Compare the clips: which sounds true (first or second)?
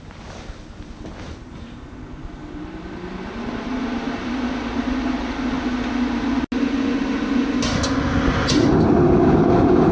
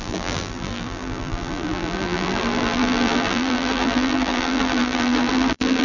first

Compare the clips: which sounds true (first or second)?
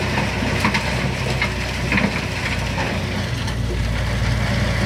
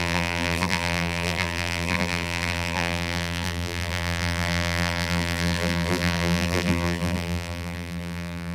first